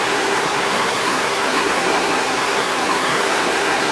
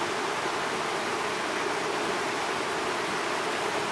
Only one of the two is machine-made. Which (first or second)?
first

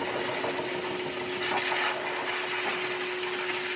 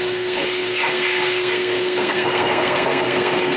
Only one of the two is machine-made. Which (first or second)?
second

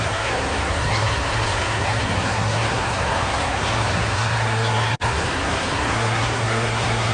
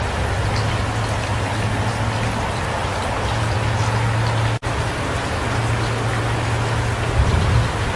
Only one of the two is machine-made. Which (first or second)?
first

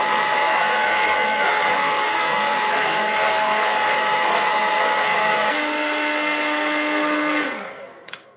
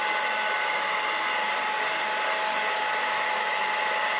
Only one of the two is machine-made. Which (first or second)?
first